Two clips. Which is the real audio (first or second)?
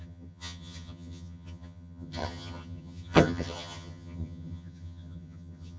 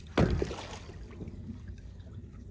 second